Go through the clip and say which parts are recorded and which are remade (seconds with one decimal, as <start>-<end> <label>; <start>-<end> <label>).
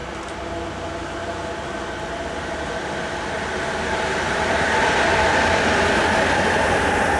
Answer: 0.0-7.2 recorded